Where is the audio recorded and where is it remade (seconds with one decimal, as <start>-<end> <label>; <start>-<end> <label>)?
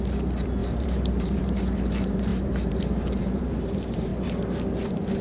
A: 0.0-4.1 remade; 4.1-5.2 recorded